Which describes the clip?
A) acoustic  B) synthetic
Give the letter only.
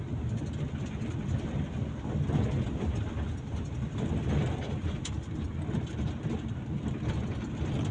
A